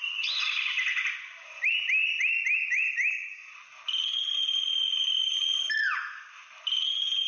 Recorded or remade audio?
recorded